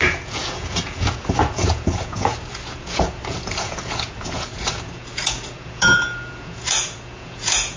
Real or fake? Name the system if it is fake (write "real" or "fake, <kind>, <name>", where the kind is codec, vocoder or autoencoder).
fake, vocoder, Vocos